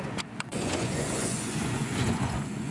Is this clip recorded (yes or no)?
no